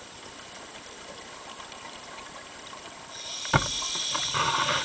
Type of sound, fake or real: real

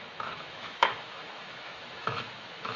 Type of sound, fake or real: fake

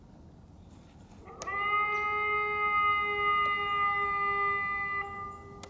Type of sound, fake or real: real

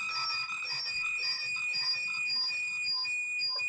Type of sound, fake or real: real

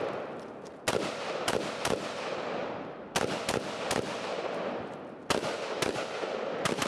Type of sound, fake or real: real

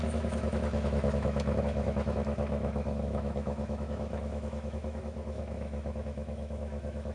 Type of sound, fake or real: fake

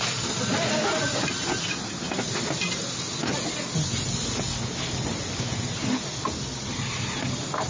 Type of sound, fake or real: real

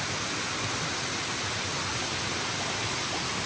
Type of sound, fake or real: real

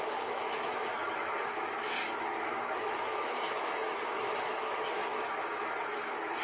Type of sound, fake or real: fake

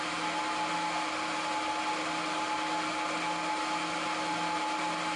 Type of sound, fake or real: real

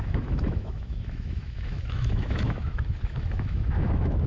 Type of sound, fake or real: fake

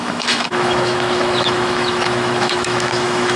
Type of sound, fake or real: fake